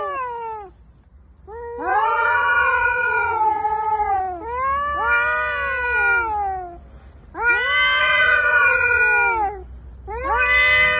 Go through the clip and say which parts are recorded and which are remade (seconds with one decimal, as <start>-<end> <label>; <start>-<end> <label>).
0.0-1.9 recorded; 1.9-4.2 remade; 4.2-8.0 recorded; 8.0-9.0 remade; 9.0-11.0 recorded